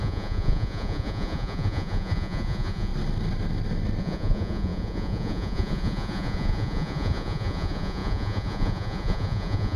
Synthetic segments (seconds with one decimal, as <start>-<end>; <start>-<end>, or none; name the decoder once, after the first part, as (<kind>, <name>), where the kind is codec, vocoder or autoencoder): 0.0-2.9 (vocoder, Vocos); 4.0-9.8